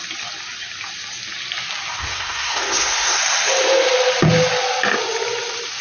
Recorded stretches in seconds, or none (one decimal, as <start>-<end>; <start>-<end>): 0.0-2.0; 3.2-5.8

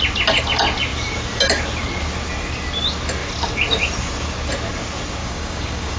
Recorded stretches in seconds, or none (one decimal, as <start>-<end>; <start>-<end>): 0.0-5.2

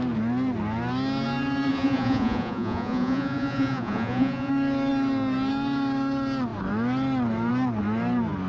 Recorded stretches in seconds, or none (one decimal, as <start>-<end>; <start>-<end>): 0.0-1.7; 4.5-8.5

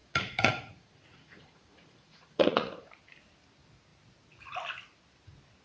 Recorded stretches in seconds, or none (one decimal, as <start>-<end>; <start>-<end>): 2.9-5.6

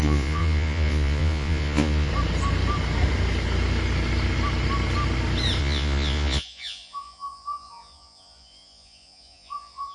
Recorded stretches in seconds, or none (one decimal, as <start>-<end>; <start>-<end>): 2.1-5.6